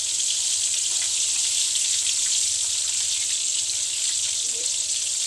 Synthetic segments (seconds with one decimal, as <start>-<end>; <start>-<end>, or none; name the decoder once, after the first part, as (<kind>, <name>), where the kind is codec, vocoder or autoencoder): none